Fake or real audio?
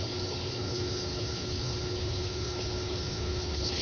fake